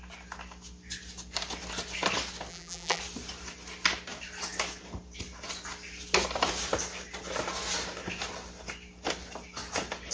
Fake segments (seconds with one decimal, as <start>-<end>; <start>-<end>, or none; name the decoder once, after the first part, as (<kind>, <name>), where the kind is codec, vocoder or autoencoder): 2.5-3.0 (vocoder, BigVGAN v2)